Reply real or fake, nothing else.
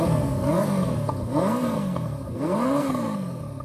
fake